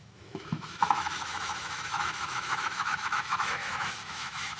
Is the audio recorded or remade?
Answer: remade